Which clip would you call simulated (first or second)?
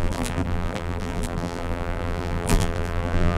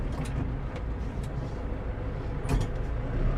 first